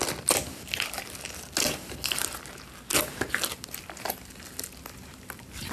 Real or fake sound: real